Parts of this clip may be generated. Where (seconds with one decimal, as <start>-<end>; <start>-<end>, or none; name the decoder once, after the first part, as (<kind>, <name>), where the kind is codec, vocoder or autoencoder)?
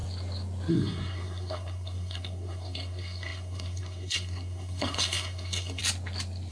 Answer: 0.7-5.8 (codec, SNAC)